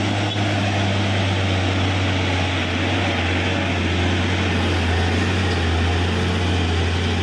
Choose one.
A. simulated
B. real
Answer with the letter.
B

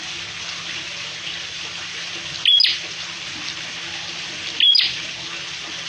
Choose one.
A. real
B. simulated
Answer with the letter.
A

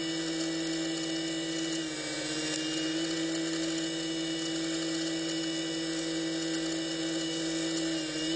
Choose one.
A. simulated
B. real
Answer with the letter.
B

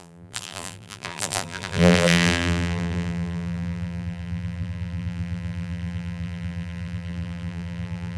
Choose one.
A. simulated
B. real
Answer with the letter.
A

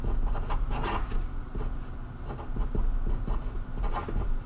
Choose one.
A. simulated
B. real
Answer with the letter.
B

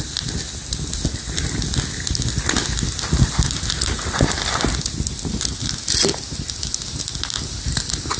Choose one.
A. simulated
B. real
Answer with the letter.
B